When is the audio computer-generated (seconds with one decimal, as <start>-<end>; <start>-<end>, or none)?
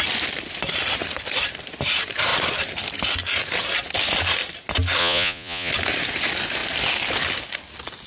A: 5.0-5.7